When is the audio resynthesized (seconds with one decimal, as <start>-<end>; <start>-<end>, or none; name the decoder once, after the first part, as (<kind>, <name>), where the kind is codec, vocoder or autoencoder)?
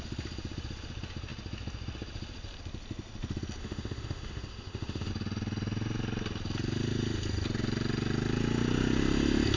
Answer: 3.6-5.1 (autoencoder, DAC-VAE)